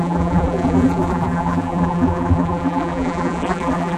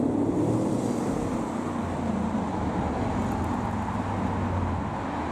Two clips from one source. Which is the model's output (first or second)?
first